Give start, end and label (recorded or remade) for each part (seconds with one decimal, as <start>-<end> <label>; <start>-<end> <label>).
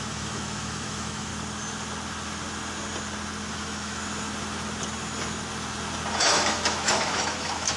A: 0.0-1.3 remade; 1.3-3.5 recorded; 3.5-4.0 remade; 4.0-6.2 recorded; 6.2-7.8 remade